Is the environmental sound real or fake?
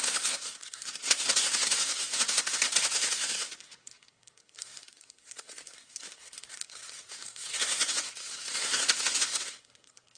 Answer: fake